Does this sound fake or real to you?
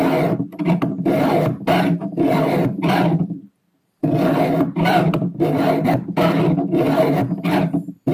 real